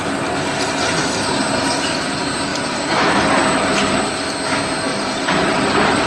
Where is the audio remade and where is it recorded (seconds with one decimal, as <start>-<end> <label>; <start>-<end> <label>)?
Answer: 0.0-2.5 recorded; 2.5-4.0 remade; 4.0-4.9 recorded; 4.9-6.1 remade